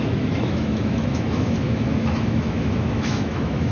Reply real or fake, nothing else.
fake